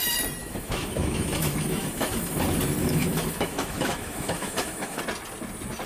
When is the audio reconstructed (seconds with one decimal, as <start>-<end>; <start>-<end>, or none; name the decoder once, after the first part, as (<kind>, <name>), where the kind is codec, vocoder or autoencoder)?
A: 0.4-2.3 (autoencoder, DAC-VAE); 2.8-5.0